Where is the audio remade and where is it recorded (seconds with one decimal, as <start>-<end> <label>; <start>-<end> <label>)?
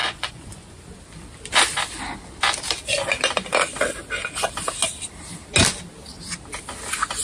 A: 0.0-0.8 remade; 0.8-7.2 recorded